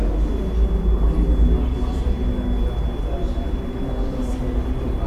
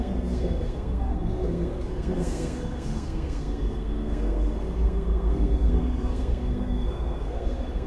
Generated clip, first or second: second